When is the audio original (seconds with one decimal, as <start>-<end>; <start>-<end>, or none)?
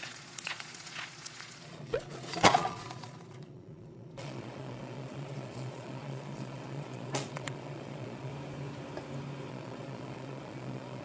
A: 8.3-9.5